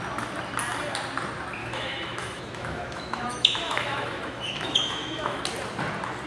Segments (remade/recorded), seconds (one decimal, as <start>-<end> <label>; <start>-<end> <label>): 0.0-1.6 recorded; 1.6-5.4 remade; 5.4-6.3 recorded